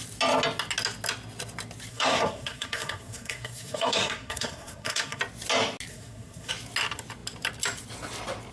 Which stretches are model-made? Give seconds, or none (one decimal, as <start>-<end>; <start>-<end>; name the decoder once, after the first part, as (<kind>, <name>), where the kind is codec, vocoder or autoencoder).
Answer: 1.9-5.2 (codec, SNAC); 5.9-6.5